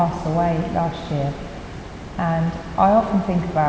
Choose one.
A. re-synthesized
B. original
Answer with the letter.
B